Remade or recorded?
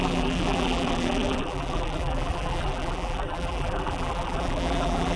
remade